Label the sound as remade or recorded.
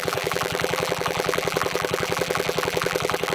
remade